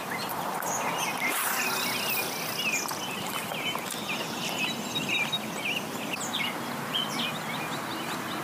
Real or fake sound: real